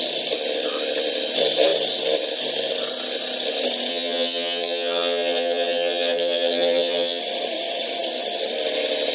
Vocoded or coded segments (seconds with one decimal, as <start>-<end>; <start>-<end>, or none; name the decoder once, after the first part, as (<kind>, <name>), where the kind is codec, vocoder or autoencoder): 3.9-7.2 (vocoder, HiFi-GAN)

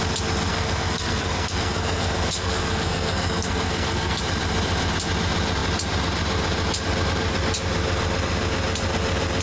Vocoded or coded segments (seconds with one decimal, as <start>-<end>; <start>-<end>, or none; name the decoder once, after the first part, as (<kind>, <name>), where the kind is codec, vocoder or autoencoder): 0.5-4.2 (codec, SNAC)

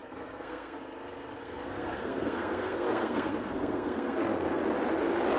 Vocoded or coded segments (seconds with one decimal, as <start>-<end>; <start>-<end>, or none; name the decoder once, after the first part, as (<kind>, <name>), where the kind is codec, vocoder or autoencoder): 0.0-0.8 (codec, SNAC); 1.4-4.6

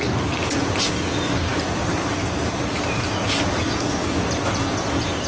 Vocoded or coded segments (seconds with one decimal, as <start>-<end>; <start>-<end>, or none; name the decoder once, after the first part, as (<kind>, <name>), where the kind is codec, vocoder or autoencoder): none